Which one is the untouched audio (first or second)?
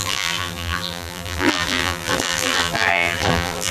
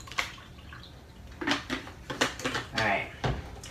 second